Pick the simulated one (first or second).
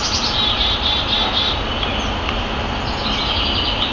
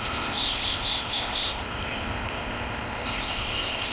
second